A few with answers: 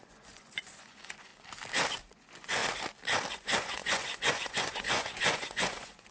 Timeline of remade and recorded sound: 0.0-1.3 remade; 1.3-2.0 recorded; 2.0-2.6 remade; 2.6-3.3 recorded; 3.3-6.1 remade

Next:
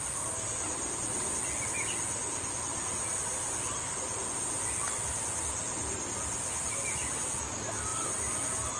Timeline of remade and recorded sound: 0.0-8.8 recorded